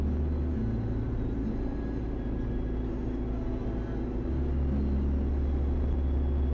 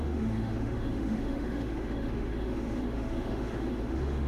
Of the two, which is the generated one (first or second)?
second